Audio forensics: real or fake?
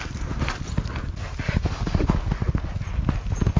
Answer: real